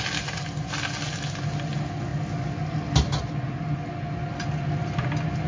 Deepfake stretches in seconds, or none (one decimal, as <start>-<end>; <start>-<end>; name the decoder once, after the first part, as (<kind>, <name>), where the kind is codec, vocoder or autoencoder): none

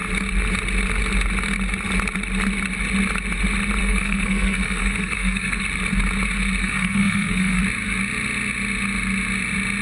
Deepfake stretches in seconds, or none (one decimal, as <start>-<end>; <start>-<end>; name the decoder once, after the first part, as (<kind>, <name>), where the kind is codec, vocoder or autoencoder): 3.8-5.6 (codec, SNAC); 6.6-7.6

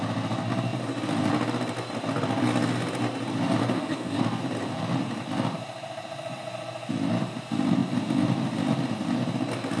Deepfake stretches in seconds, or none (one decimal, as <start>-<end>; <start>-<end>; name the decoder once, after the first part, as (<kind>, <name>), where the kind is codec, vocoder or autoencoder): 3.6-4.4 (codec, SNAC)

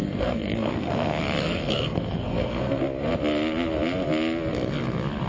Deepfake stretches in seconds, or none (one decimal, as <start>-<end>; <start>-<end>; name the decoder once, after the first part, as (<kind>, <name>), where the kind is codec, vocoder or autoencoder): 0.0-1.2 (codec, SNAC); 1.6-2.8